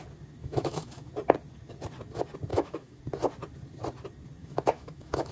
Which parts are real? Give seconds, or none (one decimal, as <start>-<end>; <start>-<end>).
0.0-0.4; 1.1-2.5; 3.0-4.4